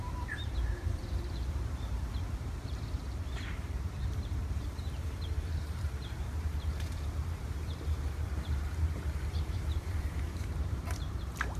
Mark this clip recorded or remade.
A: remade